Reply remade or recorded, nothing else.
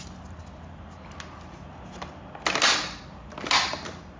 recorded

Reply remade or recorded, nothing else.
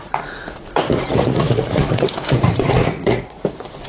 remade